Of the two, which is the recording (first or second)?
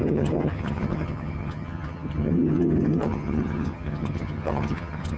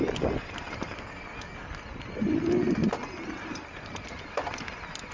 second